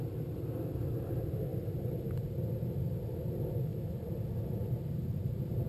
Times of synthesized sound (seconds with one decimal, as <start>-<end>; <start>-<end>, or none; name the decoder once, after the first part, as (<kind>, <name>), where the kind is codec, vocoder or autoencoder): none